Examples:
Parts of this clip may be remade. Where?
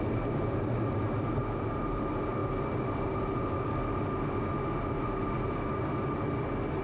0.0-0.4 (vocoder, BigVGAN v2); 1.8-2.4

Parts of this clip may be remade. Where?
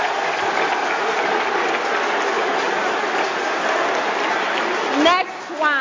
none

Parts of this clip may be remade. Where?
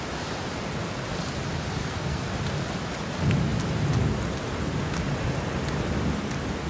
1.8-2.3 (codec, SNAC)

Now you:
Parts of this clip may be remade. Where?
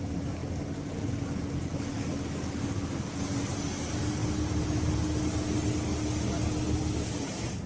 none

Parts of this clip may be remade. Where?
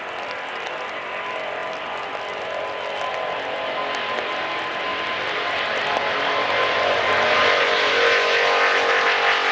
none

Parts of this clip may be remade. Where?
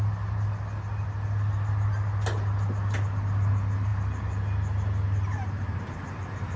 none